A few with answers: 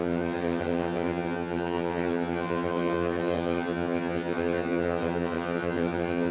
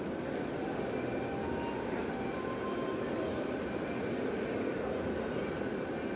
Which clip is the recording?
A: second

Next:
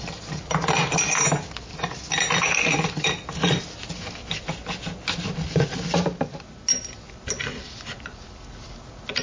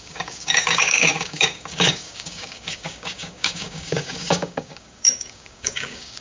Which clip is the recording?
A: first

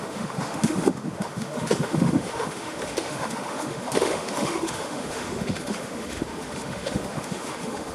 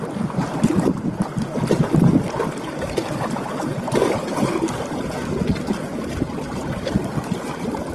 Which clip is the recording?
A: second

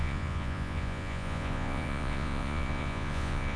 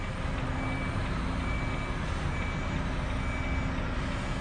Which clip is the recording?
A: second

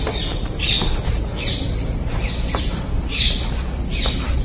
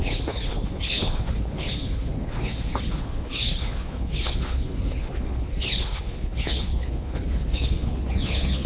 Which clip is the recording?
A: first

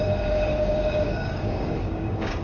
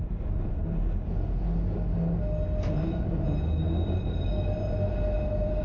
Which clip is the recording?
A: second